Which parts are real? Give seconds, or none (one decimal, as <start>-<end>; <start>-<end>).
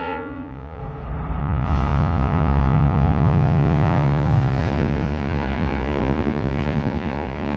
0.8-1.4